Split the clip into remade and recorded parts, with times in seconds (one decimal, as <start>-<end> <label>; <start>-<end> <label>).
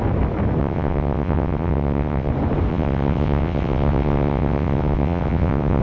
0.0-0.6 recorded; 0.6-2.3 remade; 2.3-2.7 recorded; 2.7-5.8 remade